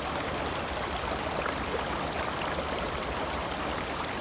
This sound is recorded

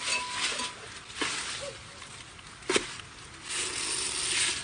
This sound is recorded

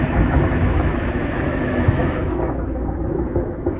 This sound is remade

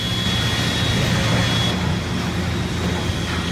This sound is recorded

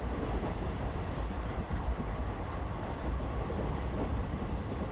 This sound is recorded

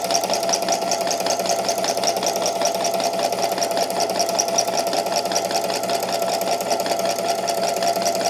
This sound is recorded